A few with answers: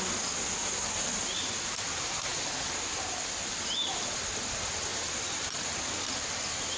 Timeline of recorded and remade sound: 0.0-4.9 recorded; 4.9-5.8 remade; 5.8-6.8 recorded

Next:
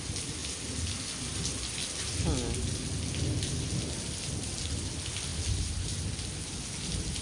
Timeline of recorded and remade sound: 0.0-7.2 recorded

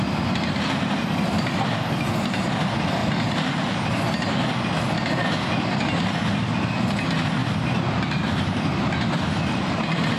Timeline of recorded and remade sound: 0.0-10.2 recorded